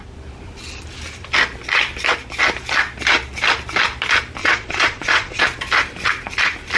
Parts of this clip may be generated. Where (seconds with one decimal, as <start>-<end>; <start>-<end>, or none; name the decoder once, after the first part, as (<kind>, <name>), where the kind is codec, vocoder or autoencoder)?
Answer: 4.4-5.4 (vocoder, Vocos)